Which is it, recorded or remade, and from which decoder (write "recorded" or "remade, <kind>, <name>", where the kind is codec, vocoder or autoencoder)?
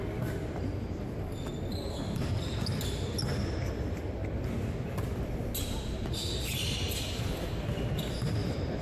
recorded